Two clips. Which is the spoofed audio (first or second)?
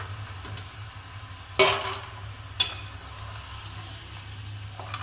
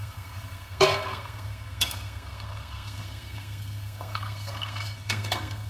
second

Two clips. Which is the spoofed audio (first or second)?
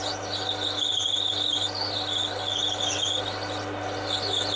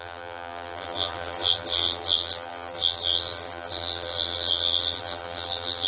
second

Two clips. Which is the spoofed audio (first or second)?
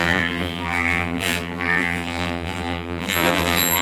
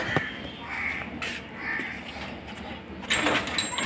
first